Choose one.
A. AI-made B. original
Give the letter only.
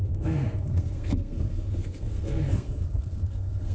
A